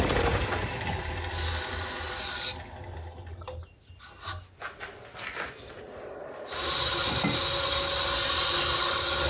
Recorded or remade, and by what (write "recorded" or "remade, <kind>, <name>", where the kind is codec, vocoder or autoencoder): recorded